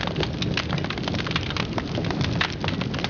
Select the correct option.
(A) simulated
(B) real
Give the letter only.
B